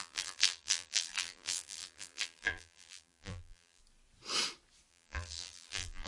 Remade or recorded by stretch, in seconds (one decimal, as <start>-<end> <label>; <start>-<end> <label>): 0.0-3.8 remade; 3.8-4.9 recorded; 4.9-6.1 remade